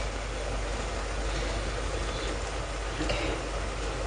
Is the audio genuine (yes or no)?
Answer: yes